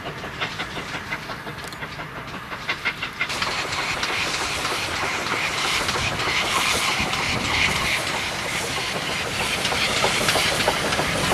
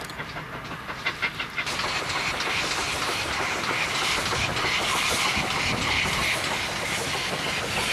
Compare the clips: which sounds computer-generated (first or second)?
first